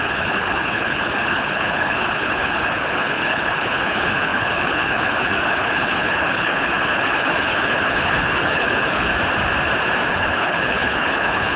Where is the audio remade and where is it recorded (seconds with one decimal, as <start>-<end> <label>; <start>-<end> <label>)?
0.0-9.1 remade; 9.1-10.1 recorded; 10.1-11.6 remade

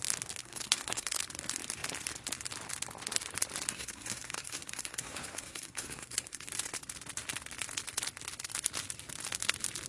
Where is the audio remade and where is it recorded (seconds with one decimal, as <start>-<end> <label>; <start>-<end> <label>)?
0.0-0.4 recorded; 0.4-1.2 remade; 1.2-3.7 recorded; 3.7-6.5 remade; 6.5-9.9 recorded

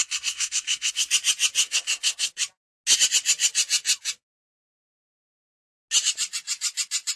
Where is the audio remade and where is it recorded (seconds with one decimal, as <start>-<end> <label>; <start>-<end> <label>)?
0.0-1.1 remade; 1.1-1.6 recorded; 1.6-2.3 remade; 2.3-7.2 recorded

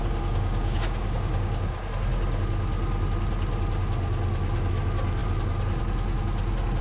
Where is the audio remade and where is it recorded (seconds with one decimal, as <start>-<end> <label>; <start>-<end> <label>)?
0.0-1.8 remade; 1.8-6.8 recorded

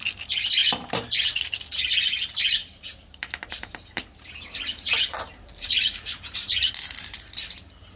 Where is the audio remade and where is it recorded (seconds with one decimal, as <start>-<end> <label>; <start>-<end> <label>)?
0.0-0.6 recorded; 0.6-1.2 remade; 1.2-2.6 recorded; 2.6-6.7 remade; 6.7-8.0 recorded

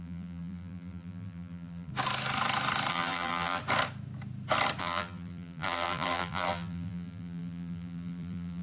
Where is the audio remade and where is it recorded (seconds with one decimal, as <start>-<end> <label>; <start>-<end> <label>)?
0.0-1.9 remade; 1.9-2.9 recorded; 2.9-3.6 remade; 3.6-4.8 recorded; 4.8-8.6 remade

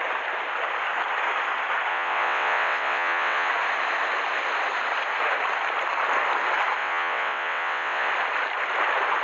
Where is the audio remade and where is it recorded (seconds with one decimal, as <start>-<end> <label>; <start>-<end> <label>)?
0.0-1.9 recorded; 1.9-3.5 remade; 3.5-6.8 recorded; 6.8-8.1 remade; 8.1-9.2 recorded